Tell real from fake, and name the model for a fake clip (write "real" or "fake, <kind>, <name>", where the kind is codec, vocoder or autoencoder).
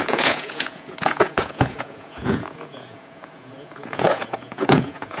fake, vocoder, Vocos